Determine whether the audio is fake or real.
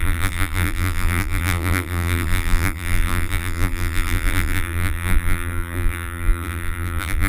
fake